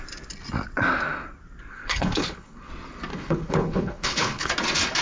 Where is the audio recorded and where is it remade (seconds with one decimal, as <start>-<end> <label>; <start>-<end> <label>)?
0.0-1.7 recorded; 1.7-2.7 remade; 2.7-3.1 recorded; 3.1-4.5 remade; 4.5-5.0 recorded